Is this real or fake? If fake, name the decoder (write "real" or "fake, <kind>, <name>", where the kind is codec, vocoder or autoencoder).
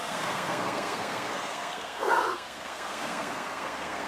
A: fake, codec, SNAC